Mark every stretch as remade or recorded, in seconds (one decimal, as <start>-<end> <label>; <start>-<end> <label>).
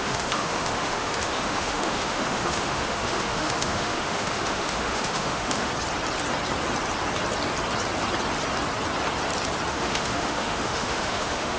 0.0-5.7 remade; 5.7-9.7 recorded; 9.7-11.6 remade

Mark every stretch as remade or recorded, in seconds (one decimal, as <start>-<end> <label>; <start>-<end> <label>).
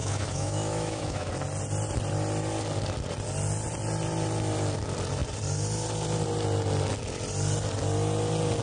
0.0-1.3 remade; 1.3-8.6 recorded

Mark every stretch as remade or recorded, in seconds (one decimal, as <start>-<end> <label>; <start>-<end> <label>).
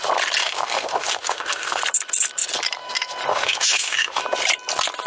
0.0-0.4 recorded; 0.4-1.8 remade; 1.8-3.3 recorded; 3.3-4.2 remade; 4.2-5.1 recorded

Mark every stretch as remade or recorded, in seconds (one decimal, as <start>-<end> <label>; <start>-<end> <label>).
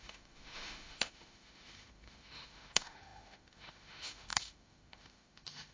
0.0-5.7 remade